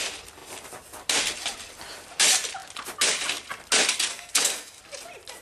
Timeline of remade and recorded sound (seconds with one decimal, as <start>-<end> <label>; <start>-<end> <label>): 0.0-4.1 recorded; 4.1-4.8 remade; 4.8-5.4 recorded